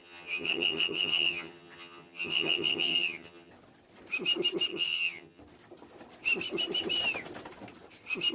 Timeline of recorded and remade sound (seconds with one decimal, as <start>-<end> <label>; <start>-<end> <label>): 0.0-3.5 remade; 3.5-4.7 recorded; 4.7-5.4 remade; 5.4-8.3 recorded